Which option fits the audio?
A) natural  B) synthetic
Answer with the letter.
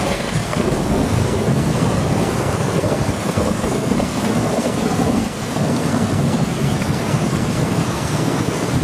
B